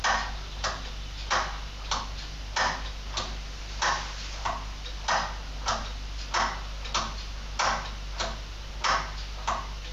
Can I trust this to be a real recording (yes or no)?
yes